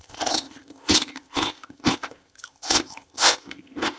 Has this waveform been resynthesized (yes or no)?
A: yes